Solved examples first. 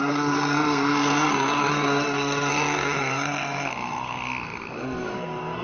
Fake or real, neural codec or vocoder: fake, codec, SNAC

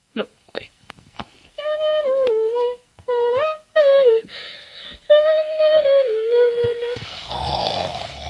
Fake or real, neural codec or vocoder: fake, codec, SNAC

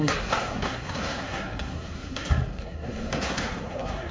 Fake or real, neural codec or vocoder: fake, codec, SNAC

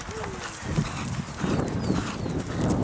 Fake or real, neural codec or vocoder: real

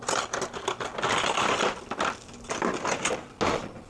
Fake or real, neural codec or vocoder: real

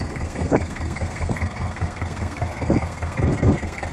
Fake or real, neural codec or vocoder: fake, codec, SNAC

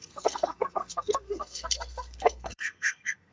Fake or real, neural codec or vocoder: fake, codec, SNAC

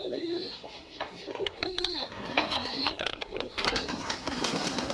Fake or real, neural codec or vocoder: fake, codec, SNAC